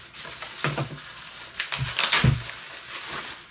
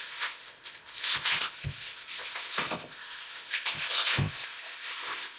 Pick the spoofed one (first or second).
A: second